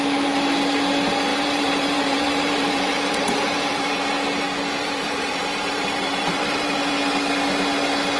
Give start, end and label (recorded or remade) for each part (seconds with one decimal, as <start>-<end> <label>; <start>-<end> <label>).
0.0-1.3 recorded; 1.3-3.9 remade; 3.9-4.8 recorded; 4.8-6.9 remade; 6.9-8.2 recorded

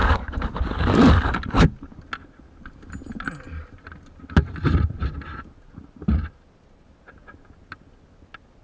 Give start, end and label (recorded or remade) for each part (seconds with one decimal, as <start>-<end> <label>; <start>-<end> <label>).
0.0-2.0 remade; 2.0-8.6 recorded